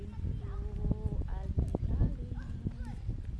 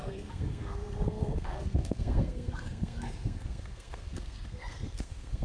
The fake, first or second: second